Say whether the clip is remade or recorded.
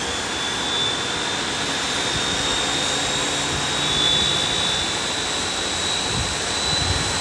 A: recorded